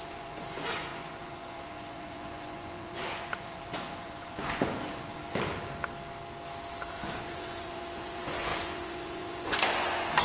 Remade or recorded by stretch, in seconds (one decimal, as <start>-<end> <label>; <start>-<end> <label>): 0.0-5.2 remade; 5.2-6.9 recorded; 6.9-10.2 remade